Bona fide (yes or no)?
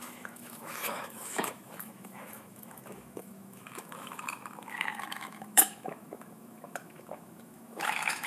no